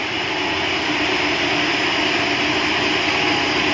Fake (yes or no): no